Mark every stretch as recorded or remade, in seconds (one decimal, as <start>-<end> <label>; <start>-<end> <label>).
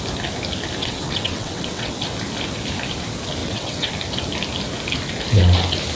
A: 0.0-0.8 recorded; 0.8-1.9 remade; 1.9-3.4 recorded; 3.4-3.9 remade; 3.9-6.0 recorded